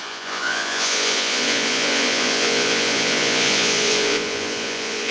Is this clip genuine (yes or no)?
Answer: no